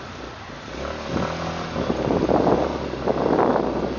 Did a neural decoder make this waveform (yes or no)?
no